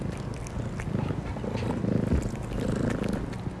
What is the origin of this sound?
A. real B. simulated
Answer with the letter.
A